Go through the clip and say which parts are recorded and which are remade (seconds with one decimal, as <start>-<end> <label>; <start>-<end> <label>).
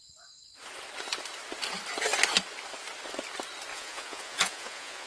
0.0-3.7 recorded; 3.7-5.1 remade